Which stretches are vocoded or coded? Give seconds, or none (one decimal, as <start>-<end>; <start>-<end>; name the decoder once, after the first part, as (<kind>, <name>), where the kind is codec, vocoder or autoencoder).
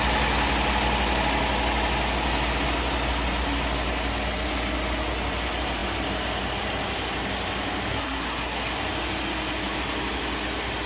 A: 7.9-8.7 (codec, SNAC)